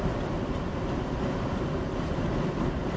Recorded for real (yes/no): yes